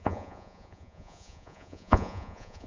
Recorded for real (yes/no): no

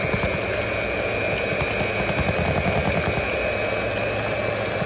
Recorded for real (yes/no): yes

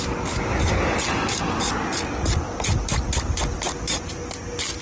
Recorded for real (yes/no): yes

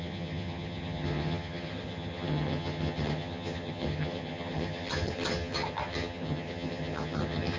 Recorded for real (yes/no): no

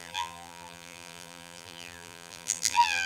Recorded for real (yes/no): no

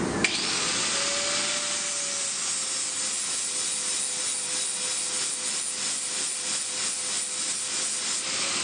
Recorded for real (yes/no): yes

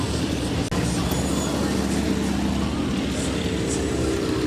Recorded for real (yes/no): yes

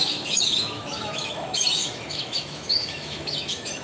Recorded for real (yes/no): no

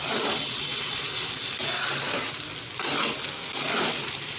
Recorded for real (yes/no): yes